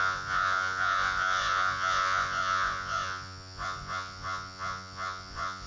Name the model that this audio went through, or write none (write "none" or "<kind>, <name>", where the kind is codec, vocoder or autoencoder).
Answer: vocoder, Vocos